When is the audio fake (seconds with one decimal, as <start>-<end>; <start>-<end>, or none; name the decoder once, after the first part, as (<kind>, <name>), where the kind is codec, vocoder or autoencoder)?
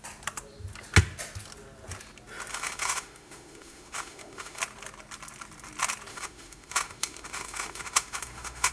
2.5-4.6 (autoencoder, DAC-VAE); 6.1-8.7